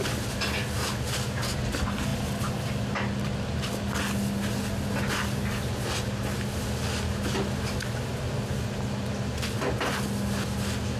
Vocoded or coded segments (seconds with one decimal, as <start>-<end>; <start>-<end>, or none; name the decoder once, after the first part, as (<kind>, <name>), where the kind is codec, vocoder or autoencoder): none